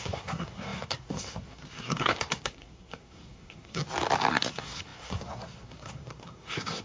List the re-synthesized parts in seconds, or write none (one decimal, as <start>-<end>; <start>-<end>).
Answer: 0.0-3.8; 4.3-6.8

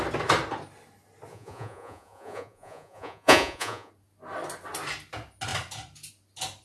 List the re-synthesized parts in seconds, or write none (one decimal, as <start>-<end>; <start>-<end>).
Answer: 1.3-3.9

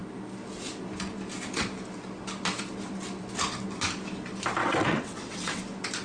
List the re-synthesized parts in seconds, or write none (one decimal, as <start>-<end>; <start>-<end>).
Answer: 4.6-5.6

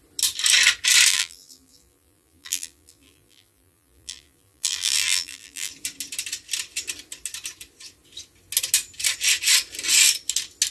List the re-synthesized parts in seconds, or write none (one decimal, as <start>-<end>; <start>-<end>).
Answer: 1.1-5.7